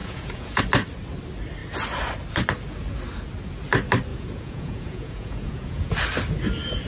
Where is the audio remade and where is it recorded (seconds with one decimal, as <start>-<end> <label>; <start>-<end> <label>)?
0.0-0.6 remade; 0.6-4.1 recorded; 4.1-5.9 remade; 5.9-6.9 recorded